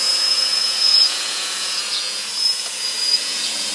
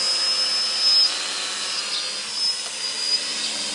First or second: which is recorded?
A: second